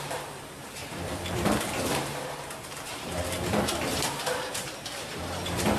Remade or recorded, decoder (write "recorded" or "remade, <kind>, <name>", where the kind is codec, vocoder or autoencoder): remade, vocoder, BigVGAN v2